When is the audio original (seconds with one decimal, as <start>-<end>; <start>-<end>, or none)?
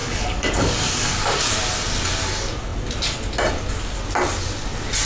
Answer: 1.5-5.1